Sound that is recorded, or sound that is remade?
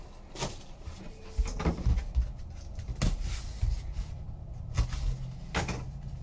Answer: recorded